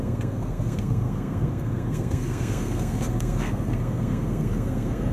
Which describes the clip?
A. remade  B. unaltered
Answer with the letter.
A